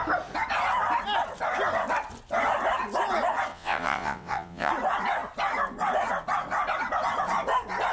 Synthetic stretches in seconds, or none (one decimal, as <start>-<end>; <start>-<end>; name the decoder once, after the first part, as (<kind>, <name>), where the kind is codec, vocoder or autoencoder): 3.5-4.7 (vocoder, WaveNeXt)